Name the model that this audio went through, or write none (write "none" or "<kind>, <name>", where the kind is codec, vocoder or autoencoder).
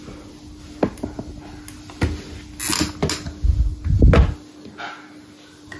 none